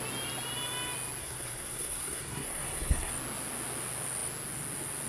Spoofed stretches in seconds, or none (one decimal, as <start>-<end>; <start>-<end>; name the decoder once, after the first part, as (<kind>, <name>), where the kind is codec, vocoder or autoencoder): 1.2-3.1 (codec, SNAC)